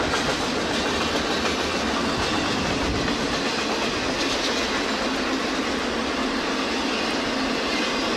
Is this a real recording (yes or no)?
yes